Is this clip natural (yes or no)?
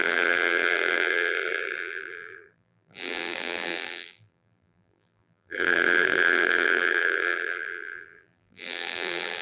no